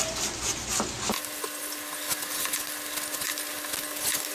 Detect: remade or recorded recorded